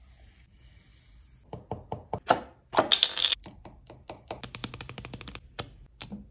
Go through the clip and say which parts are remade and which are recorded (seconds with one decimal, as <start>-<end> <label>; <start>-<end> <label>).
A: 0.0-6.3 recorded